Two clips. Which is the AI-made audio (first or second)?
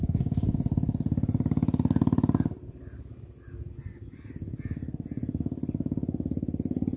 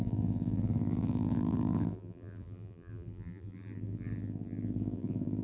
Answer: second